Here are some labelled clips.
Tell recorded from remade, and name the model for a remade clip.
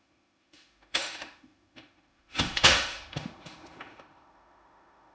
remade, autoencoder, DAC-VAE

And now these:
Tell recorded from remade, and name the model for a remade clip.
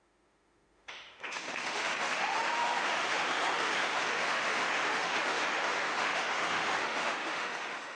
remade, autoencoder, DAC-VAE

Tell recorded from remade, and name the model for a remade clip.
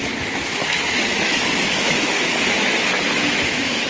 remade, autoencoder, DAC-VAE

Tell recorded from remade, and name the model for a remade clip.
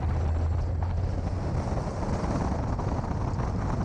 recorded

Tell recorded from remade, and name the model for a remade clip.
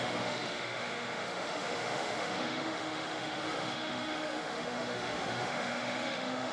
remade, autoencoder, DAC-VAE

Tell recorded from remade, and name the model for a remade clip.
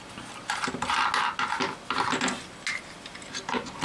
recorded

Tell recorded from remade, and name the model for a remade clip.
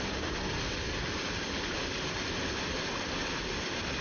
recorded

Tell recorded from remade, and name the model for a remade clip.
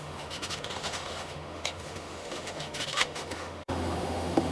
remade, autoencoder, DAC-VAE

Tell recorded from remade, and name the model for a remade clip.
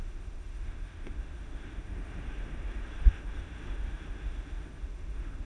remade, autoencoder, DAC-VAE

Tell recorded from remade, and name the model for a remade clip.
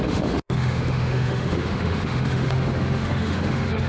remade, autoencoder, DAC-VAE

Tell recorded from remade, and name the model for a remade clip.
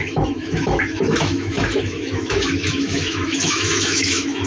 remade, autoencoder, DAC-VAE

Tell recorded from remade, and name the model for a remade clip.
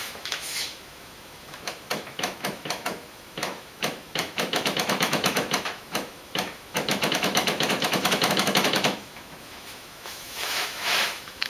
remade, autoencoder, DAC-VAE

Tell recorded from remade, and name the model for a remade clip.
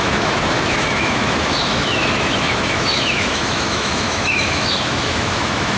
remade, autoencoder, DAC-VAE